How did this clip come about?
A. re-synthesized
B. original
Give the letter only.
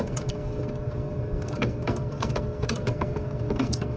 A